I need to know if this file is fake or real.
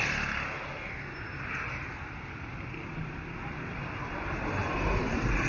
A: real